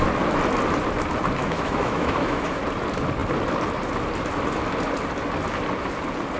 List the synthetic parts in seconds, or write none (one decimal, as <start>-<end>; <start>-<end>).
1.4-2.6